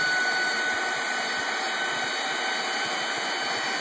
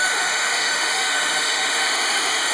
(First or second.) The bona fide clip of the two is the first